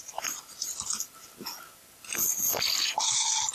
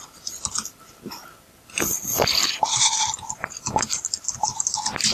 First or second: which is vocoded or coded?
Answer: second